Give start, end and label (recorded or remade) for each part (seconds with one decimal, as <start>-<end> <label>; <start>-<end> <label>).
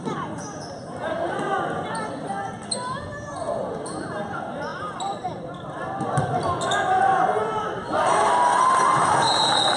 0.0-9.8 recorded